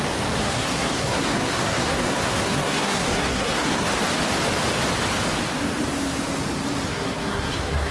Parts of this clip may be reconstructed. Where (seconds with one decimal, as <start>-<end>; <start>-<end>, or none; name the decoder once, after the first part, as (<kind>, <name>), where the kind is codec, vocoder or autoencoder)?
0.4-3.9 (codec, SNAC); 6.9-7.9